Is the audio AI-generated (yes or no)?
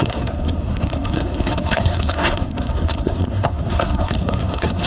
yes